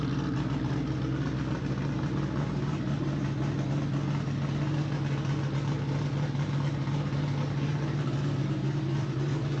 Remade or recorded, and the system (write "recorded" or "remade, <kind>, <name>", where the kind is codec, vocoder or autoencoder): recorded